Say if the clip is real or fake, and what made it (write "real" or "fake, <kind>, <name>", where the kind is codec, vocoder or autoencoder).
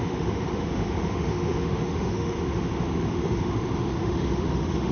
fake, autoencoder, DAC-VAE